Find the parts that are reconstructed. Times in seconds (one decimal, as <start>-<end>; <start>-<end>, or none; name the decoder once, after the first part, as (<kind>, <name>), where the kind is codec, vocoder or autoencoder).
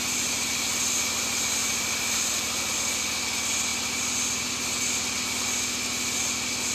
1.6-2.7 (vocoder, BigVGAN v2)